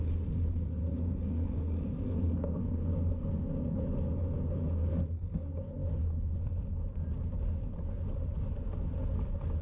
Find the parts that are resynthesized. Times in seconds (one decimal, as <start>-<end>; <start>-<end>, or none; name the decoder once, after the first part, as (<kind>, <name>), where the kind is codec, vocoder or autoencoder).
0.8-3.4 (codec, SNAC)

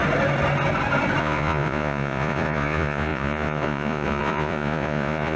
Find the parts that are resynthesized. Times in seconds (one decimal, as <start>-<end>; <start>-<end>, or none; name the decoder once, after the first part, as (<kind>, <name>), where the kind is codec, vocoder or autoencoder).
1.2-5.4 (vocoder, Vocos)

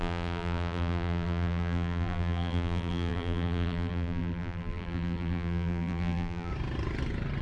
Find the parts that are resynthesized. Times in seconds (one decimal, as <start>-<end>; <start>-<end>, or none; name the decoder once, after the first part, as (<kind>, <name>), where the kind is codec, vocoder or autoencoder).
0.0-6.5 (vocoder, BigVGAN v2)

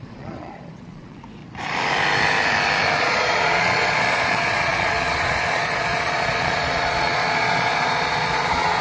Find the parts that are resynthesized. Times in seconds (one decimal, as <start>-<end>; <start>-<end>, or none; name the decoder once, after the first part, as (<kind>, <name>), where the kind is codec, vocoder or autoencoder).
0.0-1.4 (vocoder, Vocos); 3.0-8.8

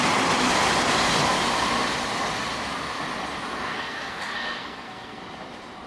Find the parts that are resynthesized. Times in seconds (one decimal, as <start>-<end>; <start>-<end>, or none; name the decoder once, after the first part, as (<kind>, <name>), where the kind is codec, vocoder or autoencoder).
3.7-5.2 (codec, SNAC)

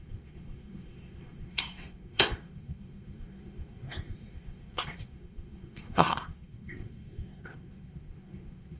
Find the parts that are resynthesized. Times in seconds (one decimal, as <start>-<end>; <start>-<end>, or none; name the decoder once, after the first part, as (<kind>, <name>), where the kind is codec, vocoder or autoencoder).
0.0-8.8 (codec, SNAC)

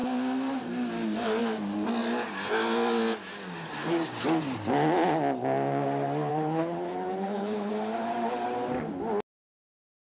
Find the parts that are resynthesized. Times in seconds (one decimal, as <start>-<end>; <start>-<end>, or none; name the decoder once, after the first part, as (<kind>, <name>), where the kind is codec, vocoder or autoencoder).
6.3-7.7 (codec, HILCodec)

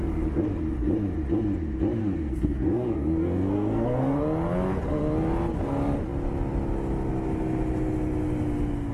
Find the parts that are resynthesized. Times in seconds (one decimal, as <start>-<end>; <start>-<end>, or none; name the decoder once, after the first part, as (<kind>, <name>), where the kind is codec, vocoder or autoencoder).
2.0-4.2 (codec, SNAC)